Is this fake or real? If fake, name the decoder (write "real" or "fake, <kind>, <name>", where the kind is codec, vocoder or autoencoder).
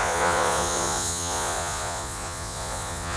fake, vocoder, Vocos